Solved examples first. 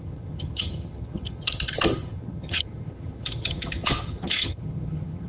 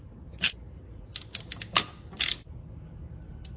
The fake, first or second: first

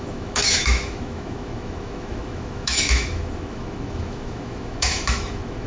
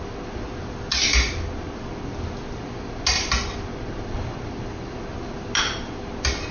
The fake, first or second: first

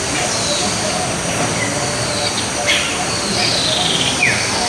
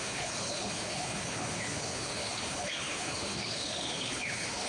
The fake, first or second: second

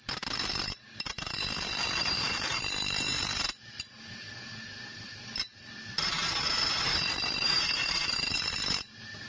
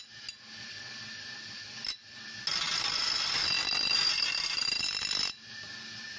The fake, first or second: first